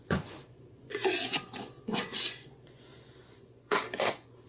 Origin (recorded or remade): remade